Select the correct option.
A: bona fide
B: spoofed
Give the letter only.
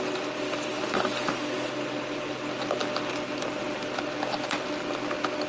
A